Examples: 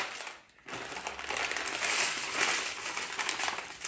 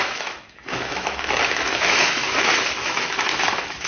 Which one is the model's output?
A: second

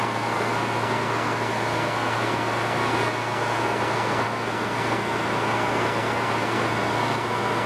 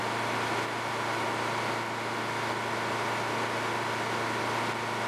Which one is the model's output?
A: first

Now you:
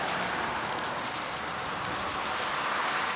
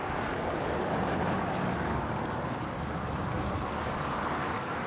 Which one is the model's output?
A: second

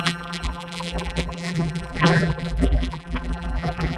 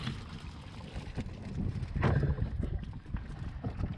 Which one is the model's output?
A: first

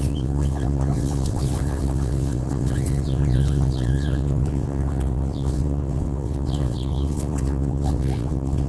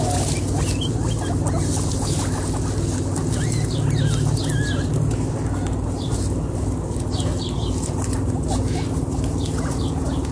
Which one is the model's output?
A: first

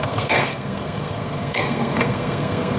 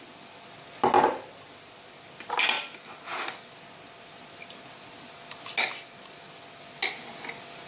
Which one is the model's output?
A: first